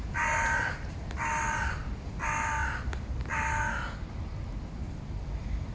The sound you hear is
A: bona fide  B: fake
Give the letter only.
A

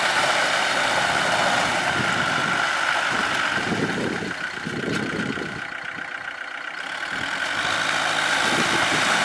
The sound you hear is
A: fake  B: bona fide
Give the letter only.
B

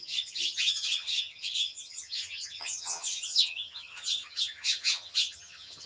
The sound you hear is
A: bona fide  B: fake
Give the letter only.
B